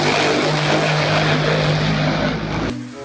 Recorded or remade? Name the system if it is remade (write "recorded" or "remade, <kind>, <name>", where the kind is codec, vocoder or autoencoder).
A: recorded